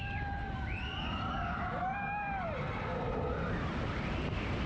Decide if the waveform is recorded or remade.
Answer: recorded